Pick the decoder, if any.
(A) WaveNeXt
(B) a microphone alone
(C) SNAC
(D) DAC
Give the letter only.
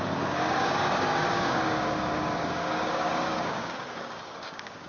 D